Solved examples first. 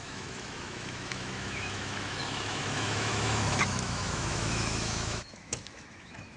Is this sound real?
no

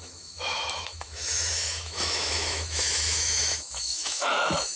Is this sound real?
no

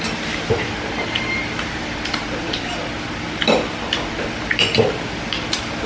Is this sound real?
no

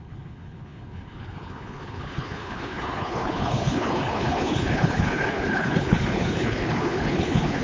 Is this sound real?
no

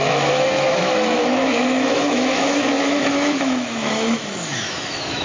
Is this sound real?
no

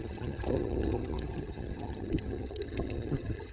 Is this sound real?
no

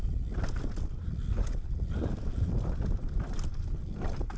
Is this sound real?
yes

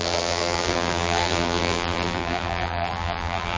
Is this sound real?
no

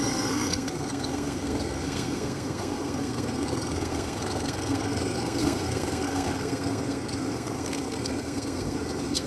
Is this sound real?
no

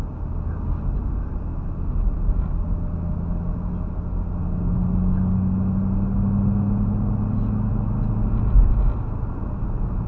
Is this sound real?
yes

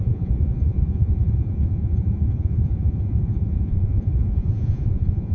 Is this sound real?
no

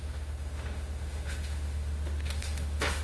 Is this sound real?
no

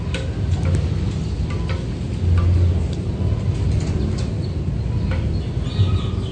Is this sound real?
yes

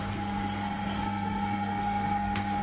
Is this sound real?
no